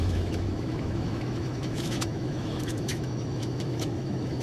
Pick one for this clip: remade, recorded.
remade